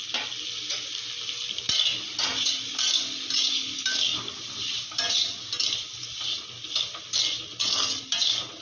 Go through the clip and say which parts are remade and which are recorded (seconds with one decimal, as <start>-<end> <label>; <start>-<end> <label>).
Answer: 0.0-8.6 recorded